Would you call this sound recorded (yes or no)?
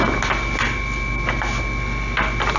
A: yes